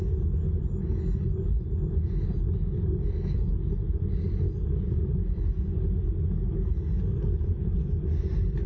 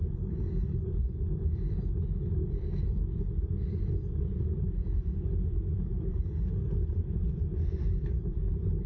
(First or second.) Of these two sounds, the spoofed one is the second